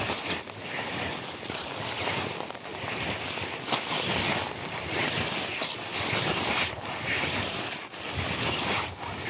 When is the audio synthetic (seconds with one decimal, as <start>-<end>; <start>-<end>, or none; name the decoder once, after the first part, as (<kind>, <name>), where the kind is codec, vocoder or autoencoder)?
none

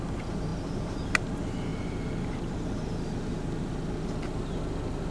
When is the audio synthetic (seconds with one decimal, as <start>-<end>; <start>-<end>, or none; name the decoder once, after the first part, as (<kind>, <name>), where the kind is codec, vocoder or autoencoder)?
none